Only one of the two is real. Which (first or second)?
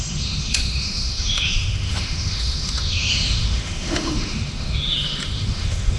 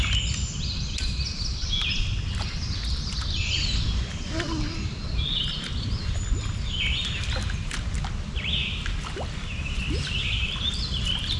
second